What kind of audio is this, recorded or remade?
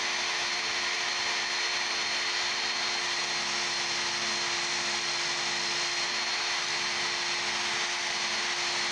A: recorded